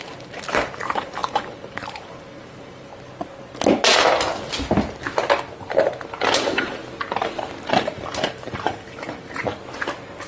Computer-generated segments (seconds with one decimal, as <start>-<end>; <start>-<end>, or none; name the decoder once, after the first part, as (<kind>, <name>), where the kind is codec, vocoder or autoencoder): 0.0-2.9 (vocoder, BigVGAN v2); 6.3-6.8; 7.7-9.4

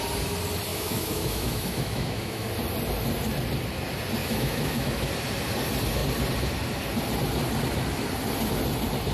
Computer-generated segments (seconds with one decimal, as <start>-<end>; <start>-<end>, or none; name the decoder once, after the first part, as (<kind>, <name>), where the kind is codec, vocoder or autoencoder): 0.7-2.5 (autoencoder, DAC-VAE); 4.2-5.1

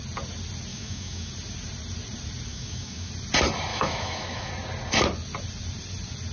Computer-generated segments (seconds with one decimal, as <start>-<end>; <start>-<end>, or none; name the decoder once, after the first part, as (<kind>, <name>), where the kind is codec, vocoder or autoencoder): 0.7-1.3 (autoencoder, DAC-VAE); 2.5-3.1; 3.7-4.5

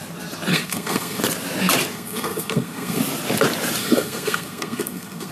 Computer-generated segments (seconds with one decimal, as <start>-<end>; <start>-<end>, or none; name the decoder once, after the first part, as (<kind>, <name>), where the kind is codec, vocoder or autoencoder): 0.5-1.2 (codec, SNAC); 1.9-3.0; 3.8-5.3